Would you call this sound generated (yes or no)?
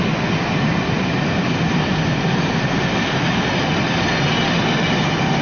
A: no